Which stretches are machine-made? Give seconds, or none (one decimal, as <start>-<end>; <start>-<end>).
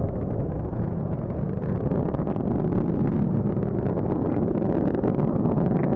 0.7-2.0